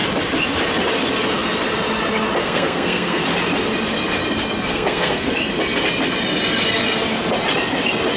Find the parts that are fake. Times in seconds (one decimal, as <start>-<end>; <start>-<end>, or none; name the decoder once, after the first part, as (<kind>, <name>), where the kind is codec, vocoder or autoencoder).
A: 2.4-3.2 (codec, SNAC); 4.7-5.3